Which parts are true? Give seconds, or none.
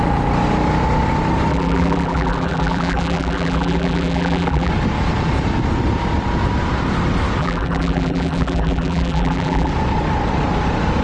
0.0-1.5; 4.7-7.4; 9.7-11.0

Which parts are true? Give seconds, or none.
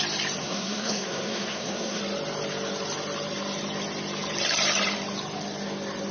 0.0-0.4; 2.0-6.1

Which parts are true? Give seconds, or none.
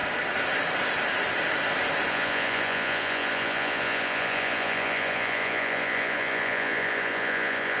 0.0-2.1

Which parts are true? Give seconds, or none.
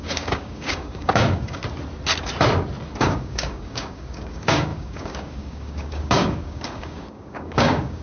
1.6-3.0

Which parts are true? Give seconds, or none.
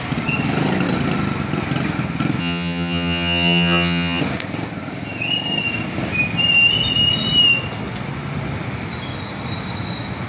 0.0-2.4; 4.2-10.3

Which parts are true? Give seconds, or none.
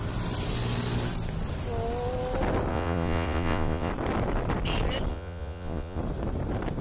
0.0-2.7; 3.9-5.1; 6.0-6.8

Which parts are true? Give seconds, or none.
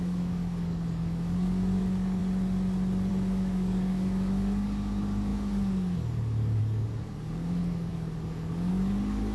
2.2-3.1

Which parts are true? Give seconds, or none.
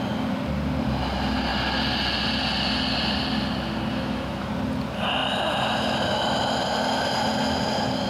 0.0-3.9; 4.5-8.1